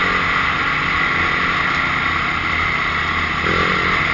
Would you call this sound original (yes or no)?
yes